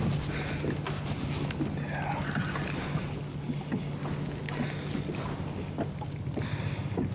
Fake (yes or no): no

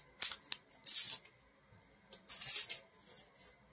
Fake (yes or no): no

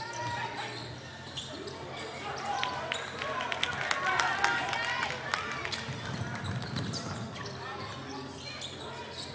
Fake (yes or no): no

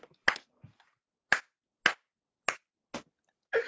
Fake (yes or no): no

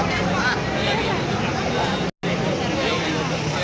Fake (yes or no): no